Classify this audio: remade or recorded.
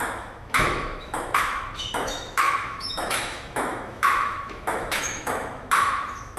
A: remade